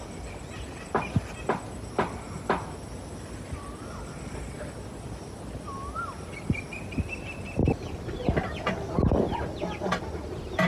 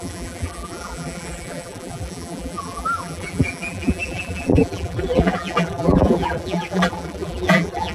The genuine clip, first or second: first